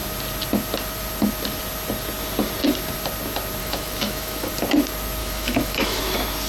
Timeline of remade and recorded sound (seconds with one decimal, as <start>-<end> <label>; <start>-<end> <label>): 0.0-3.6 recorded; 3.6-4.5 remade; 4.5-5.2 recorded; 5.2-6.0 remade; 6.0-6.5 recorded